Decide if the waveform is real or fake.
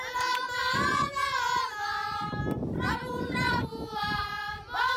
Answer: real